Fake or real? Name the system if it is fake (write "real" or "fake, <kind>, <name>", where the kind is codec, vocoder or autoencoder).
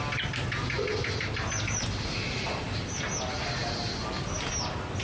real